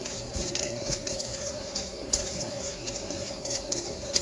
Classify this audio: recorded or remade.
remade